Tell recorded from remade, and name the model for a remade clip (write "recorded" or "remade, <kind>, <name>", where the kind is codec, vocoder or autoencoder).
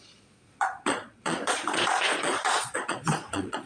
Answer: remade, vocoder, Vocos